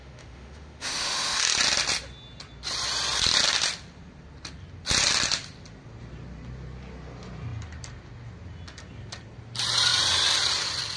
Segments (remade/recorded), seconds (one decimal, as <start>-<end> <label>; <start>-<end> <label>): 0.0-1.4 remade; 1.4-11.0 recorded